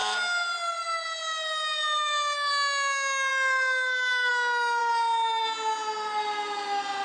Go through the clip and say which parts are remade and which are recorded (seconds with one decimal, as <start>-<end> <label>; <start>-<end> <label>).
0.0-7.0 recorded